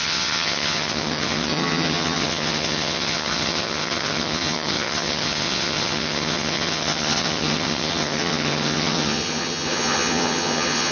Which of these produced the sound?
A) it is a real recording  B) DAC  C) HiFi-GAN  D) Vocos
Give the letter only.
C